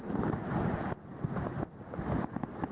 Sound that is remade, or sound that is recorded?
recorded